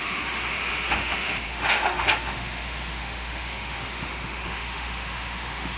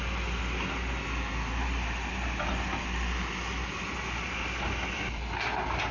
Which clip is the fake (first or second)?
first